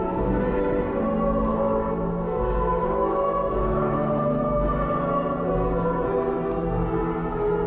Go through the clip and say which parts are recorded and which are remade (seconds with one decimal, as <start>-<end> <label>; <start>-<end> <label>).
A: 0.0-1.5 recorded; 1.5-4.4 remade; 4.4-7.7 recorded